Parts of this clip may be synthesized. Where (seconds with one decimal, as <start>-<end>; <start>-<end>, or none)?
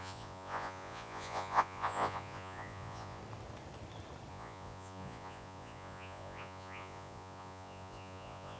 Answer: 0.0-3.2; 4.3-8.6